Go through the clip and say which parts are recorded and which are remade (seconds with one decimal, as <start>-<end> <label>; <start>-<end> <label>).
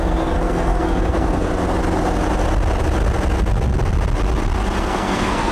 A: 0.0-1.5 remade; 1.5-4.8 recorded; 4.8-5.5 remade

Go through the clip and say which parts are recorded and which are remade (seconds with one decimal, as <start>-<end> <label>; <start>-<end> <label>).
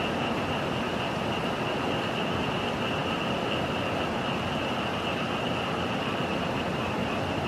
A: 0.0-2.4 remade; 2.4-7.5 recorded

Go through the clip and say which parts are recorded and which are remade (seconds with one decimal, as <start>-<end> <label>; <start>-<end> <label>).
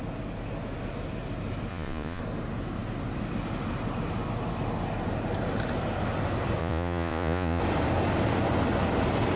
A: 0.0-1.7 recorded; 1.7-2.2 remade; 2.2-6.6 recorded; 6.6-7.6 remade; 7.6-9.4 recorded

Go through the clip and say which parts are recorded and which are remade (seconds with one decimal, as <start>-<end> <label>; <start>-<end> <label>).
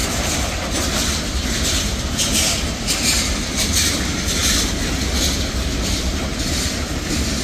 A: 0.0-4.4 remade; 4.4-5.8 recorded; 5.8-7.4 remade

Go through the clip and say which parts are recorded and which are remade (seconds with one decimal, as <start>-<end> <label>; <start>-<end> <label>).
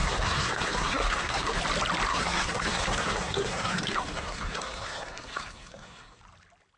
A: 0.0-1.6 remade; 1.6-2.1 recorded; 2.1-6.2 remade; 6.2-6.8 recorded